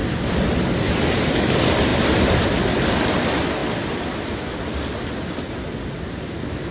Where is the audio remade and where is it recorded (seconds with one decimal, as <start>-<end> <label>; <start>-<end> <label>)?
0.0-6.7 recorded